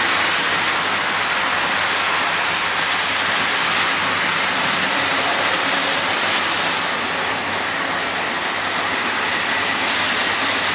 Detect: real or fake real